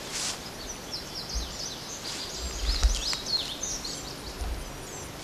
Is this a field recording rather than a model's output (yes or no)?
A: yes